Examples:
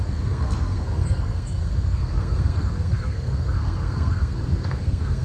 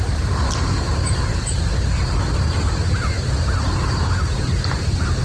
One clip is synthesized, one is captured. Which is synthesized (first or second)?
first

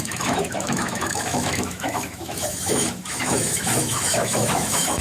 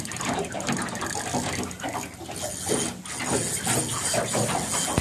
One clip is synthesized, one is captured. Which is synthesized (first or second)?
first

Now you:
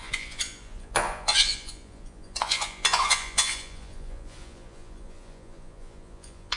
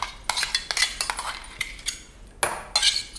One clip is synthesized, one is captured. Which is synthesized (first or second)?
first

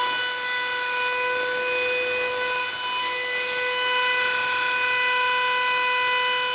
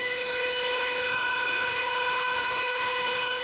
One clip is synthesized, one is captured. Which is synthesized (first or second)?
second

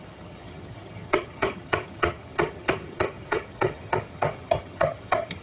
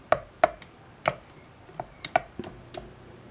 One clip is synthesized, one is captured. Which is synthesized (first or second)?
first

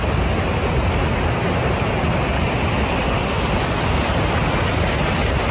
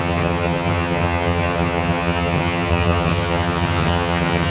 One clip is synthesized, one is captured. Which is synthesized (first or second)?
second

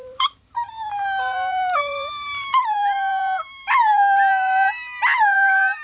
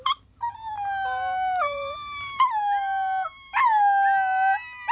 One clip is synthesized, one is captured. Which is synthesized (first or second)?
first